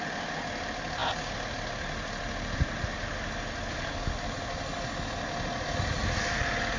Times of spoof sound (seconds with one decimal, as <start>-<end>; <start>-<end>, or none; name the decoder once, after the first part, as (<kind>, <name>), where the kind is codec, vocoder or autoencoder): none